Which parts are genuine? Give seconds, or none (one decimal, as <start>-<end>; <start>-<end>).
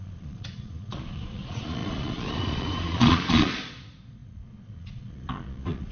none